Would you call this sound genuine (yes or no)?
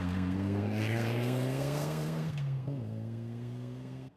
no